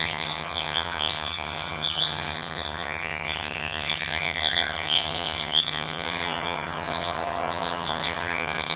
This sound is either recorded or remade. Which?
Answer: remade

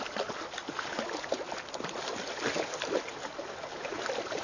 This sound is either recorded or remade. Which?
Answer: recorded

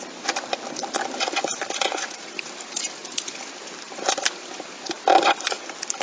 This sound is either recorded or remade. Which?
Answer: recorded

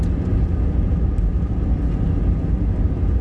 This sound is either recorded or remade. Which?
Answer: recorded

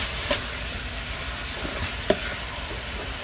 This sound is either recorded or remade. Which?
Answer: remade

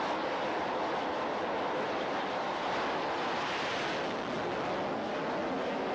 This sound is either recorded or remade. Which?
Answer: recorded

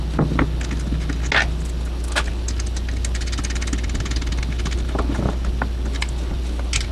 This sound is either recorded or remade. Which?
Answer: recorded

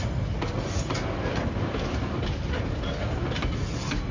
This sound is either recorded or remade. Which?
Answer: recorded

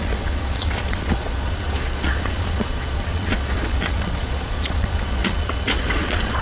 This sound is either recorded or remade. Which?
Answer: remade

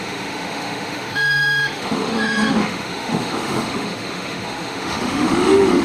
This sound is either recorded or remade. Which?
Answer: remade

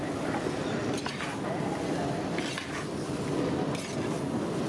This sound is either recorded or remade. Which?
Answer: recorded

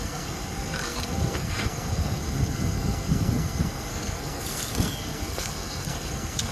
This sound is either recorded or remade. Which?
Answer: remade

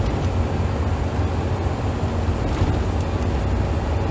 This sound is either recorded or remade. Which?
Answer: recorded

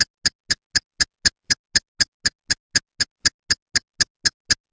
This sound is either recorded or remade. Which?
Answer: recorded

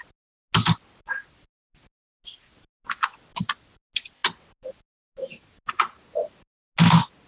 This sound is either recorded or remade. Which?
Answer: recorded